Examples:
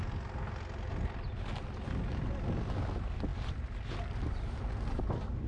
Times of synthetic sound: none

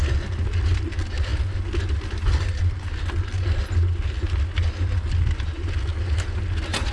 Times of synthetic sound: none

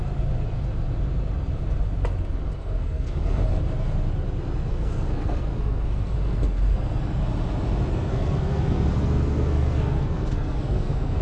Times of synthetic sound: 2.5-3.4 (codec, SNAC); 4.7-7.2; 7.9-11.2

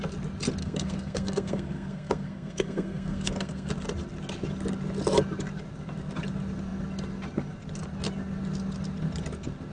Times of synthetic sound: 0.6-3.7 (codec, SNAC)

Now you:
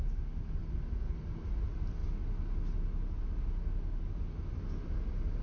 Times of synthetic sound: none

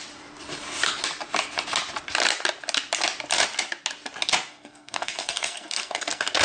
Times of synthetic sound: 4.5-6.4 (codec, SNAC)

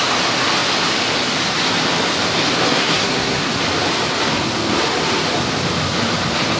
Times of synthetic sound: 2.7-3.5 (codec, SNAC)

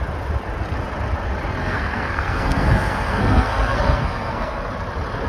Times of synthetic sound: 1.6-4.6 (codec, SNAC)